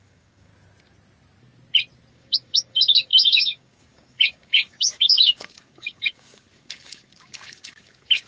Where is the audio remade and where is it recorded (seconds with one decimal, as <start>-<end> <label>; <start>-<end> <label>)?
0.0-0.5 remade; 0.5-2.1 recorded; 2.1-8.3 remade